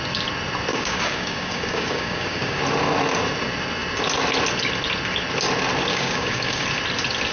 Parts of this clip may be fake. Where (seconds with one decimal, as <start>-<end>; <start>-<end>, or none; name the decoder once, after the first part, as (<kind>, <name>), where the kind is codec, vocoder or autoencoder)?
0.7-2.6 (codec, DAC); 5.9-6.6

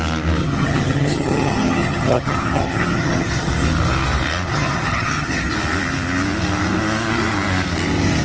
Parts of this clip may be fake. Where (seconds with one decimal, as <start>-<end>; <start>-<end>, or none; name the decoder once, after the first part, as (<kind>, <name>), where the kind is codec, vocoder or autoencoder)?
0.4-3.5 (vocoder, HiFi-GAN); 4.5-5.5